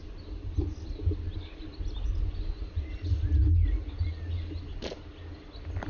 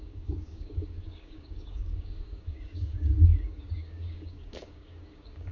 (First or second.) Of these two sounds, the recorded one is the first